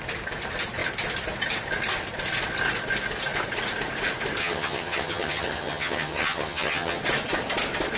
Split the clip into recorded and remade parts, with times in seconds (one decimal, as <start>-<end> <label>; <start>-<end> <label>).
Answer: 0.0-4.4 recorded; 4.4-7.0 remade; 7.0-8.0 recorded